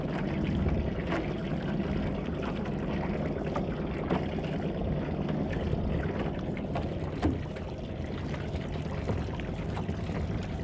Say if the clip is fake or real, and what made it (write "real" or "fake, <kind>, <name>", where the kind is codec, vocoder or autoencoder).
real